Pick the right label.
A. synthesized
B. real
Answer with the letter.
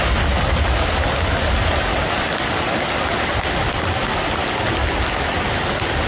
B